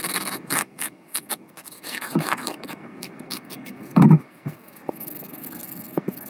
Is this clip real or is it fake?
fake